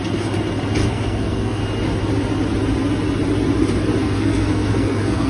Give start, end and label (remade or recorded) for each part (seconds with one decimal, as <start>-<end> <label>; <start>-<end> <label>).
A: 0.0-0.8 recorded; 0.8-1.6 remade; 1.6-4.0 recorded; 4.0-5.3 remade